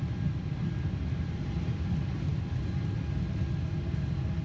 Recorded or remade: recorded